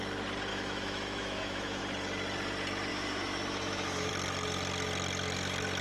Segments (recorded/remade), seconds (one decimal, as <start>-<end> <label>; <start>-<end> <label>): 0.0-0.5 recorded; 0.5-1.8 remade; 1.8-2.9 recorded; 2.9-4.1 remade; 4.1-5.8 recorded